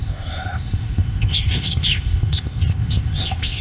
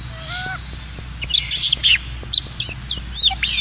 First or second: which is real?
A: second